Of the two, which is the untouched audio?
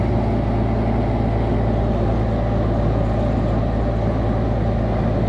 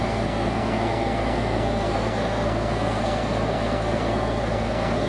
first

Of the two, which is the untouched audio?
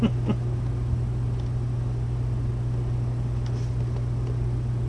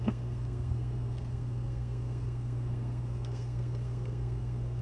first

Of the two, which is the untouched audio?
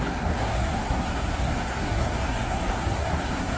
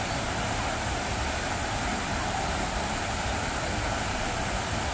second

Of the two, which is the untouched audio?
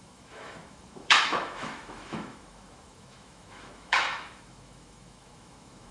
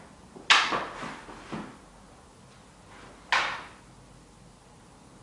second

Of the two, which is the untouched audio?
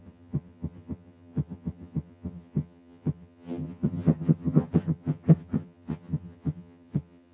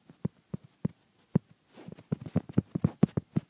second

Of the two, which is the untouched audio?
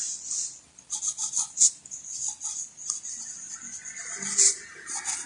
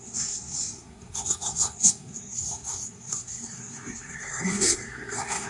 first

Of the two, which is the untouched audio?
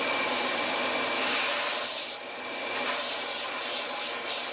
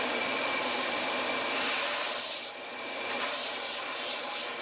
first